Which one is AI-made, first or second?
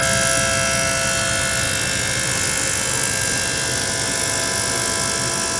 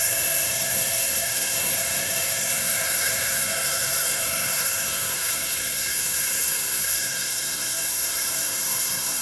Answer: second